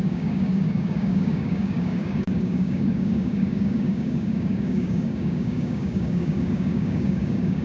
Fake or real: fake